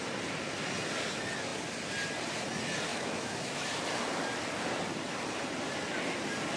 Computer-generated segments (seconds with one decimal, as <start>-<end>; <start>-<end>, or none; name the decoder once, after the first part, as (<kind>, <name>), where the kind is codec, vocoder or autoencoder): 2.9-3.7 (autoencoder, DAC-VAE)